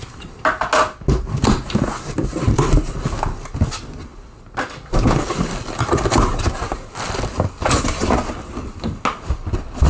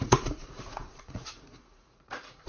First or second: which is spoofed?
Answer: second